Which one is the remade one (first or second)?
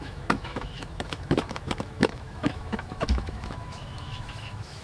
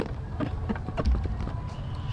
first